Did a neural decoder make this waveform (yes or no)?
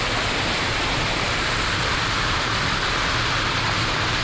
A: no